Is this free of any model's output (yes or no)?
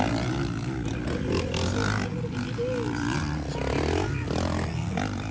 yes